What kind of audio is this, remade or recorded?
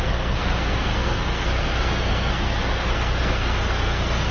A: remade